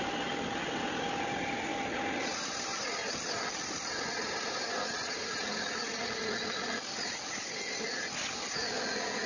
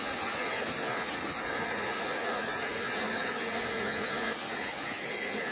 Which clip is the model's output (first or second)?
second